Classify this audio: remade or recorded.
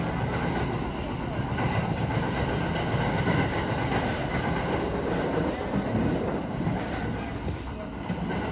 recorded